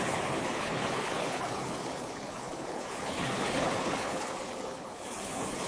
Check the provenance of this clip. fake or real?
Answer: fake